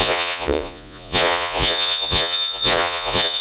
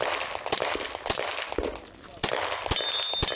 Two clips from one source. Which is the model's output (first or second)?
first